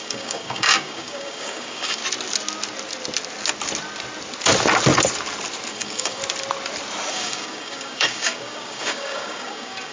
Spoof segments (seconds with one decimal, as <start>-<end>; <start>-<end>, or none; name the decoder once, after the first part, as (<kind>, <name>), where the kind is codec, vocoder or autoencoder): 0.0-2.0 (codec, DAC); 5.7-6.2; 7.1-9.9